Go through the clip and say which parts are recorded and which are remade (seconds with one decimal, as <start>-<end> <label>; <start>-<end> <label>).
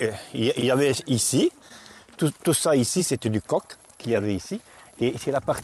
0.0-3.0 recorded; 3.0-5.1 remade; 5.1-5.6 recorded